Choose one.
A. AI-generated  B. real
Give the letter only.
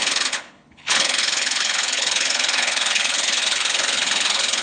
A